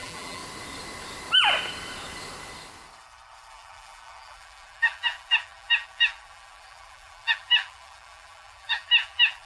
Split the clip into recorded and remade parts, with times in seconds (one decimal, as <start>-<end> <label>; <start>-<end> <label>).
0.0-0.4 remade; 0.4-3.5 recorded; 3.5-9.5 remade